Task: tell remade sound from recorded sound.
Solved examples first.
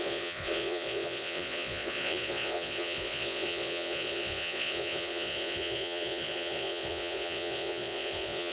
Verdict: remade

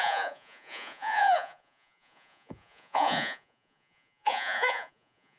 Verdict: remade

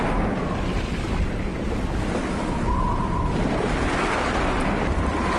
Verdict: recorded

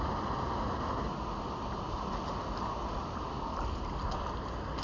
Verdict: recorded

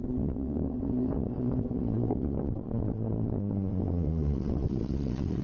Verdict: remade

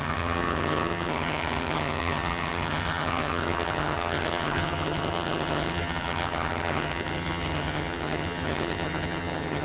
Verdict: remade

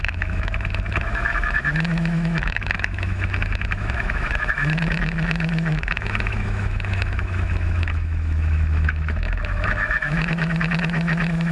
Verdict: remade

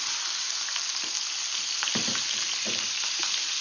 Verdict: recorded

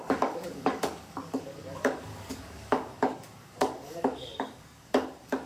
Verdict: remade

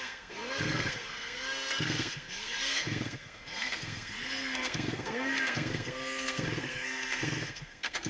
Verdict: remade